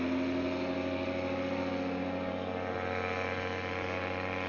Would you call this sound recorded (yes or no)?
yes